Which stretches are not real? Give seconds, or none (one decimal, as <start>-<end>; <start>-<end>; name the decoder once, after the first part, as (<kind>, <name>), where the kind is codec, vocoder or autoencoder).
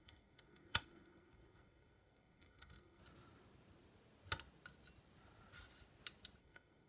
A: 0.0-3.0 (codec, SNAC); 6.4-6.9